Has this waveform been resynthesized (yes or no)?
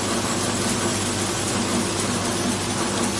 no